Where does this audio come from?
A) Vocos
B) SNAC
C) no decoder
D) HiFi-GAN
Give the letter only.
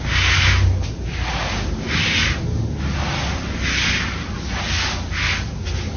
C